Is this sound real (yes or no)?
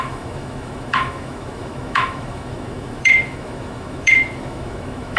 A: no